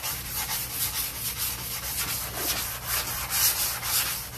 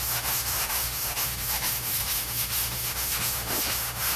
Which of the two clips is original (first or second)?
first